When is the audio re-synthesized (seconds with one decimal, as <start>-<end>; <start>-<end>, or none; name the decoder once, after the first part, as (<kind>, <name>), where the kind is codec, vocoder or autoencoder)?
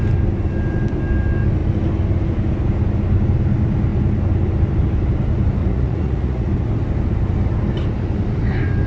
5.6-6.5 (vocoder, Vocos)